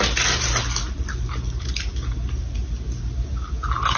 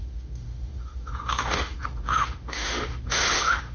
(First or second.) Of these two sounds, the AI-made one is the second